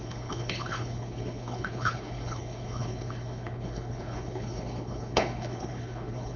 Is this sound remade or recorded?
remade